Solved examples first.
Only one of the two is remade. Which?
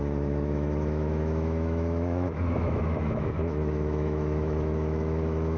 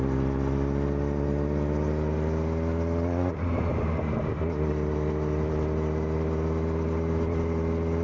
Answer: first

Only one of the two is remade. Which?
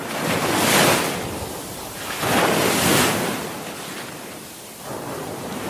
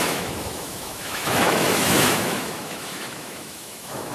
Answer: second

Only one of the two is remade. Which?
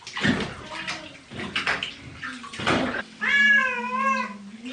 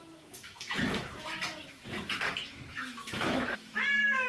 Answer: second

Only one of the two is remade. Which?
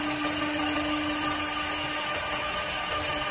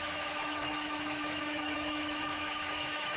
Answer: second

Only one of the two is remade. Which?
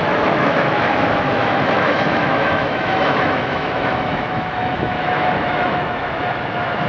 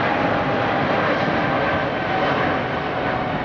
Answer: first